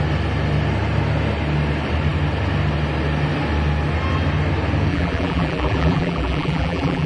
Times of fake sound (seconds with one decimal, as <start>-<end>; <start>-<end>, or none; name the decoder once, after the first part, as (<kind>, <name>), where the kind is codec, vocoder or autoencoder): 4.9-7.1 (vocoder, BigVGAN v2)